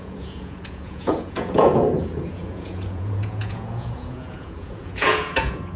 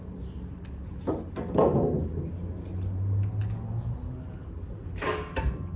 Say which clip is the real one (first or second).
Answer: second